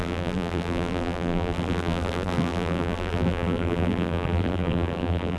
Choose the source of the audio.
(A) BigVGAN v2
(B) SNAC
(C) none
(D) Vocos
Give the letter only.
A